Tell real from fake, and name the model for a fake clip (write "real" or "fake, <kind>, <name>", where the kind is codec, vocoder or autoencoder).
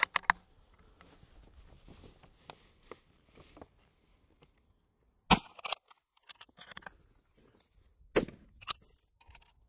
real